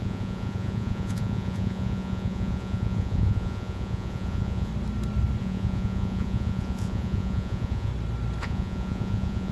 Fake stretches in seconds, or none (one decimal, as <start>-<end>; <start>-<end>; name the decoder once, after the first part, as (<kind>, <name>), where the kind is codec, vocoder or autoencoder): 0.0-4.7 (vocoder, Vocos); 5.4-7.9; 8.4-9.5